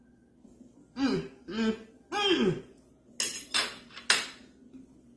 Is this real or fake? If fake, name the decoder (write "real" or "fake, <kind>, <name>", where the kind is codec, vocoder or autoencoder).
real